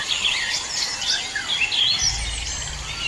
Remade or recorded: recorded